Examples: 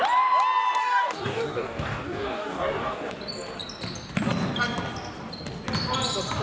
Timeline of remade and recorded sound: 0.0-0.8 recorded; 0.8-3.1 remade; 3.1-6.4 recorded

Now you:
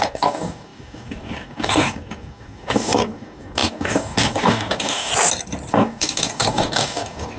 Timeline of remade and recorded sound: 0.0-5.1 remade; 5.1-5.7 recorded; 5.7-7.4 remade

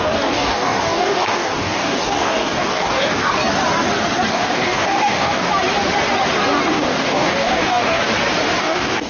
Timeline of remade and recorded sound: 0.0-3.4 remade; 3.4-4.3 recorded; 4.3-5.5 remade; 5.5-6.7 recorded; 6.7-8.0 remade; 8.0-8.6 recorded; 8.6-9.1 remade